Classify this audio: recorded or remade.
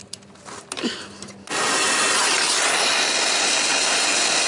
recorded